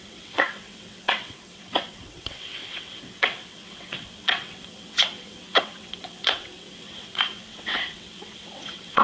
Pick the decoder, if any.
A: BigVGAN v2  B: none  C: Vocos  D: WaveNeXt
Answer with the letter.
D